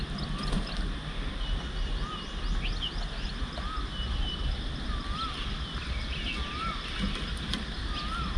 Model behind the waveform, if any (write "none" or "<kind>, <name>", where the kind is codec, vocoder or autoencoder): none